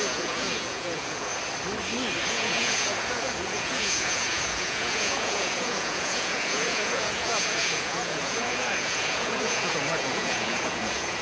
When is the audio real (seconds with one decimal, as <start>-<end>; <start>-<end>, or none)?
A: 1.3-2.3